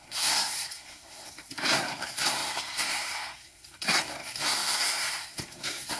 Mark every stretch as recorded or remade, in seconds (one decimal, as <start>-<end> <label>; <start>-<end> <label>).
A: 0.0-6.0 remade